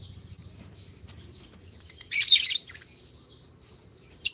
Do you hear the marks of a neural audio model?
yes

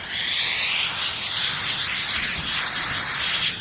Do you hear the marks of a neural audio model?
no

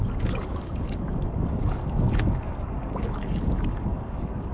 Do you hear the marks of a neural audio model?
yes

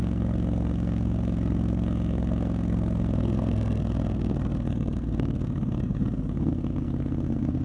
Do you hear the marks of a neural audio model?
yes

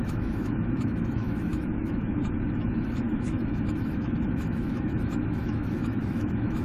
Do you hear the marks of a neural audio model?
yes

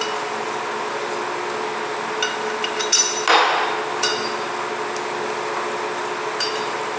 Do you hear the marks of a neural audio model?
no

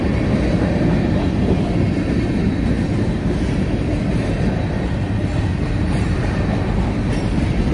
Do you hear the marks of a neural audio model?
no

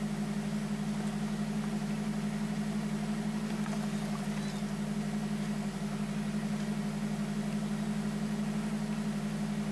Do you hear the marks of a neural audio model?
no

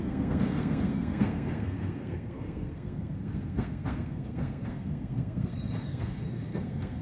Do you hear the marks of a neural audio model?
yes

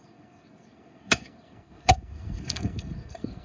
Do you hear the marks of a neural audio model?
yes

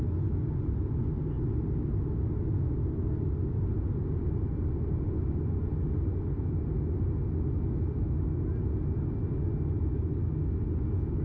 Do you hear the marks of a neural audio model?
no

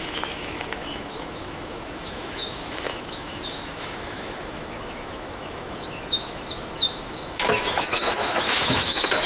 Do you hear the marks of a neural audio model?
yes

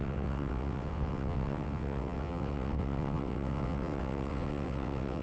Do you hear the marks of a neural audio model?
yes